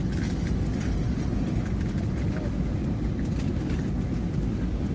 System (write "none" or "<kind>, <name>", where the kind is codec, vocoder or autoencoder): none